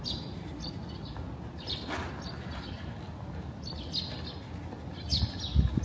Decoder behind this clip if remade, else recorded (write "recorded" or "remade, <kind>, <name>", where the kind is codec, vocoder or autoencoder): recorded